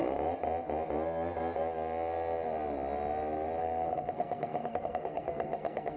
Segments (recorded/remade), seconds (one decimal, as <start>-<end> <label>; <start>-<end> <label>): 0.0-3.6 recorded; 3.6-6.0 remade